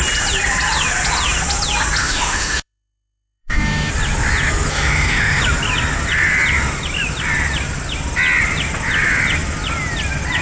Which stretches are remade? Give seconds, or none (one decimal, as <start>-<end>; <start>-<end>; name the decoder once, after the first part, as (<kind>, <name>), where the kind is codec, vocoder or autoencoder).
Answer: 2.0-3.9 (autoencoder, DAC-VAE); 4.7-5.4